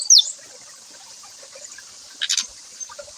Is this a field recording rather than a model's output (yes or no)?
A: yes